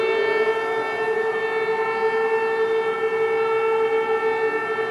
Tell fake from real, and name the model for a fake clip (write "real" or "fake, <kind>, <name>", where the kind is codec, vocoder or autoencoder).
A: real